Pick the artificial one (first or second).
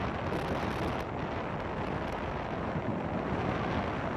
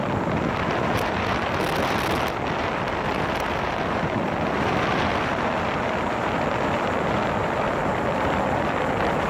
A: second